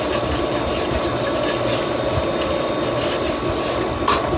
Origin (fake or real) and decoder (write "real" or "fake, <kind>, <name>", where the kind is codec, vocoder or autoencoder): real